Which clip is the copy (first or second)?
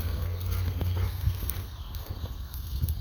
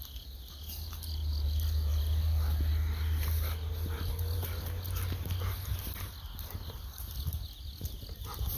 first